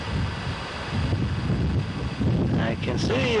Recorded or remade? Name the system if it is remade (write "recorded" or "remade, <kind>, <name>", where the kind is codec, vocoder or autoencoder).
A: recorded